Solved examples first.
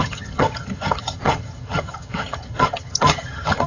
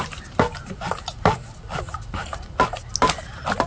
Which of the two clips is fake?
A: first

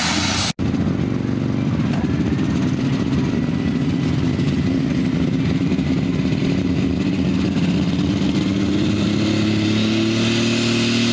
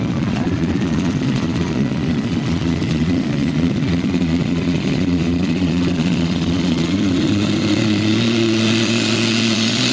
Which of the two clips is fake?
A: second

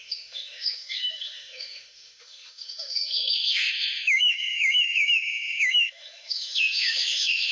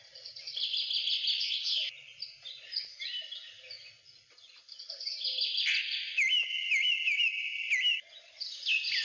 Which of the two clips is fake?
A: first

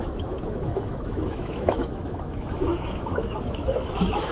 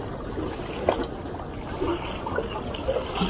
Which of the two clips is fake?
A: first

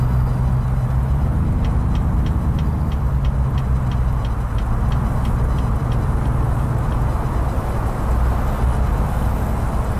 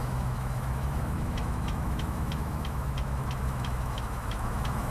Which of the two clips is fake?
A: second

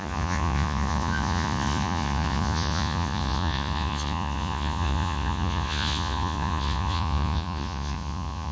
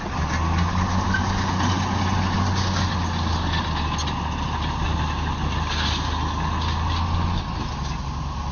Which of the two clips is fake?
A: first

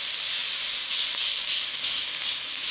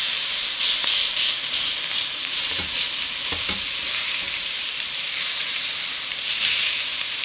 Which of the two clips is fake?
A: second